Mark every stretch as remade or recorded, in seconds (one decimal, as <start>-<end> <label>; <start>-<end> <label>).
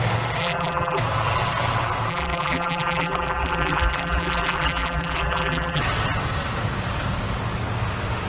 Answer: 0.0-0.4 recorded; 0.4-1.0 remade; 1.0-2.1 recorded; 2.1-5.8 remade; 5.8-8.3 recorded